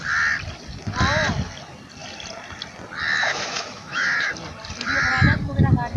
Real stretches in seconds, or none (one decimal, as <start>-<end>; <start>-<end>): 0.0-3.2; 4.3-6.0

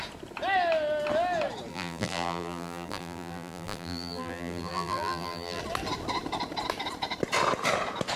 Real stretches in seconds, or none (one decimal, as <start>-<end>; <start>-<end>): 0.0-1.7; 5.6-8.2

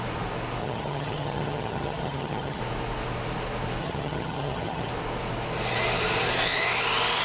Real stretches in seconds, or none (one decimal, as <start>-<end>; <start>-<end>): 0.0-0.6; 2.6-3.8; 4.9-7.2

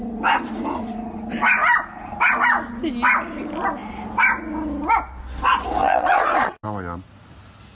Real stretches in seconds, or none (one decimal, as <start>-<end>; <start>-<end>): 0.0-5.8; 6.6-7.7

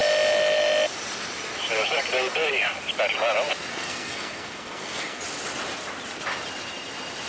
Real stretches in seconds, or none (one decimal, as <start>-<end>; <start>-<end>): 0.0-3.7; 5.2-7.3